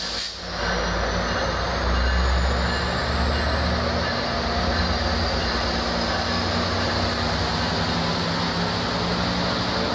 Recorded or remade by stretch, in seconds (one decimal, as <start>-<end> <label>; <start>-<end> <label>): 0.0-9.9 recorded